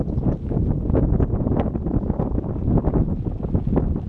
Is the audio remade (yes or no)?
no